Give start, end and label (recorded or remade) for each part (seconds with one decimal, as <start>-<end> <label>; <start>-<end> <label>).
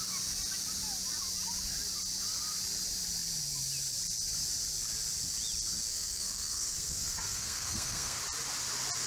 0.0-5.9 recorded; 5.9-8.2 remade; 8.2-9.1 recorded